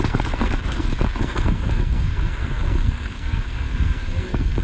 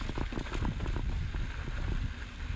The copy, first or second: first